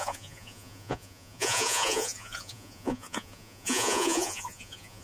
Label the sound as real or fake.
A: fake